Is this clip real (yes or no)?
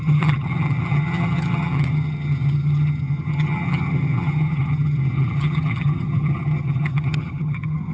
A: no